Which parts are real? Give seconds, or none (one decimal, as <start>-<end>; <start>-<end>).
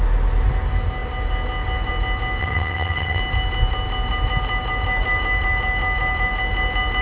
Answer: 0.0-2.4; 3.2-7.0